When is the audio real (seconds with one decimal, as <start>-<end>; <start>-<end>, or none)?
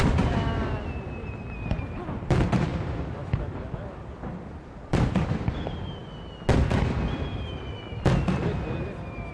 0.6-2.2; 6.0-9.3